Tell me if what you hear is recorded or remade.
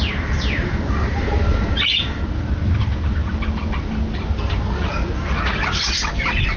recorded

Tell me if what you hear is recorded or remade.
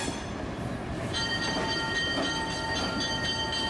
recorded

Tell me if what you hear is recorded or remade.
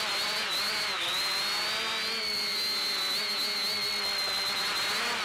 recorded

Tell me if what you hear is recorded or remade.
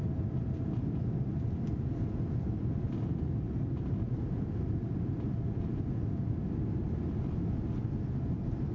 recorded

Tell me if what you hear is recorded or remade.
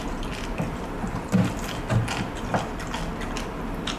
recorded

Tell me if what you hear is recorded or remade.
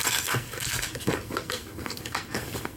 remade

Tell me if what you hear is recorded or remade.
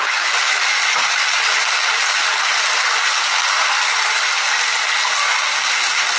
recorded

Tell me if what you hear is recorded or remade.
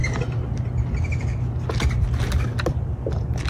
recorded